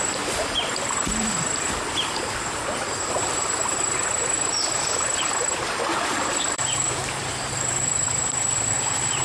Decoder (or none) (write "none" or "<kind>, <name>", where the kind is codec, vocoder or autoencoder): vocoder, BigVGAN v2